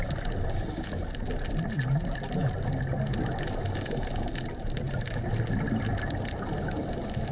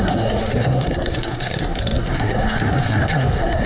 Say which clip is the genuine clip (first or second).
first